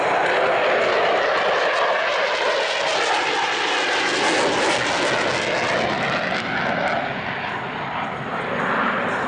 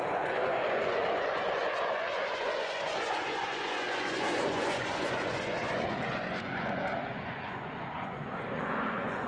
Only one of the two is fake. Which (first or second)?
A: second